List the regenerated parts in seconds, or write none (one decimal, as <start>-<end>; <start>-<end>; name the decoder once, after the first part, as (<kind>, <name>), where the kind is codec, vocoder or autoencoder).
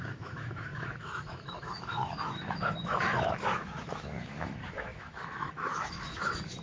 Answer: 0.0-6.6 (autoencoder, DAC-VAE)